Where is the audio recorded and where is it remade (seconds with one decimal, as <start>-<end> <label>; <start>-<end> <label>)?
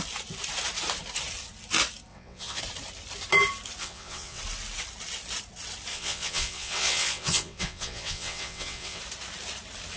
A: 0.0-2.1 recorded; 2.1-2.6 remade; 2.6-3.8 recorded; 3.8-4.4 remade; 4.4-5.9 recorded; 5.9-9.0 remade; 9.0-10.0 recorded